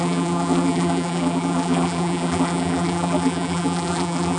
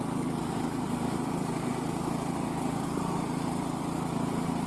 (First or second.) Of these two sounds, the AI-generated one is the first